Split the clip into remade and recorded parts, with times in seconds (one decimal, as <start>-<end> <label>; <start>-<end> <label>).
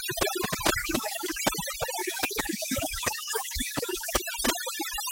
0.0-0.8 recorded; 0.8-1.4 remade; 1.4-2.0 recorded; 2.0-4.2 remade; 4.2-5.1 recorded